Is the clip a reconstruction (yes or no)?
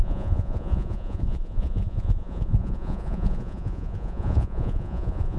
yes